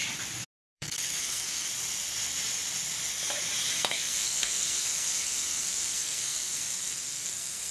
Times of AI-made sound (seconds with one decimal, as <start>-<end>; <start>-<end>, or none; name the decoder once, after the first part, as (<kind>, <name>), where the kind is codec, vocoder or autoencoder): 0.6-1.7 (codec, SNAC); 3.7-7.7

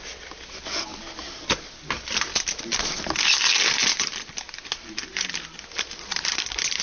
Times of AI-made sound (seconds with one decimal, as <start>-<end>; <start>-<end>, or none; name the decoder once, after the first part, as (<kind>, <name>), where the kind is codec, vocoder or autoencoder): none

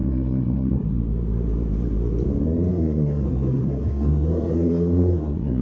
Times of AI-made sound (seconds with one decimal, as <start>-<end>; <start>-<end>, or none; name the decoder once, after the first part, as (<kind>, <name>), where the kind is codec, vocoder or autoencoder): 0.0-1.0 (codec, SNAC); 2.7-5.6